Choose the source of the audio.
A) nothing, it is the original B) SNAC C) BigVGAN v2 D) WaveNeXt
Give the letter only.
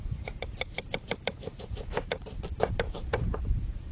C